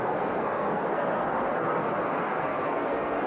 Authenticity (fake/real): fake